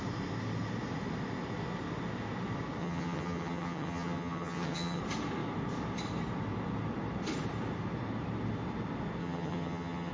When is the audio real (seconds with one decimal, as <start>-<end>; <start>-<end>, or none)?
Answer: 0.0-2.8; 5.0-9.2